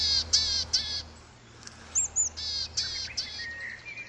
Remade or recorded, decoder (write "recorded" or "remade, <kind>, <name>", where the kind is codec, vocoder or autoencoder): recorded